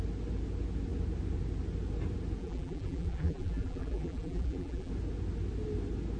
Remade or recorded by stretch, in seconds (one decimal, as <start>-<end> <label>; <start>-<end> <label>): 0.0-2.4 recorded; 2.4-4.9 remade; 4.9-6.2 recorded